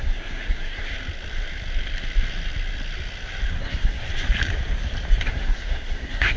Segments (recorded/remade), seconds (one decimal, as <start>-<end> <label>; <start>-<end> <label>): 0.0-0.9 remade; 0.9-3.6 recorded; 3.6-4.1 remade; 4.1-5.2 recorded; 5.2-6.4 remade